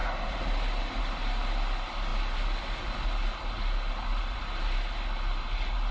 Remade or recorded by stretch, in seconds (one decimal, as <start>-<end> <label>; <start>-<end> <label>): 0.0-5.9 recorded